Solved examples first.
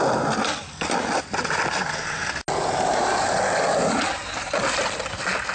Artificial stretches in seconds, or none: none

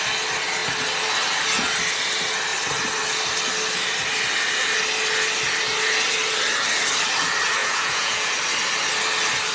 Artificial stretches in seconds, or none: 7.6-8.3 (vocoder, Vocos)

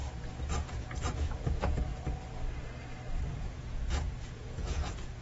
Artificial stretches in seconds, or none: 0.6-1.9 (vocoder, Vocos); 3.3-5.2

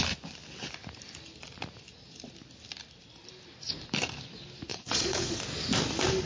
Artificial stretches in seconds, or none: 4.7-5.4 (vocoder, Vocos)